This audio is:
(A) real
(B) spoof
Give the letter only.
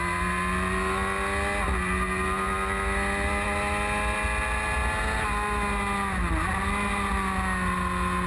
A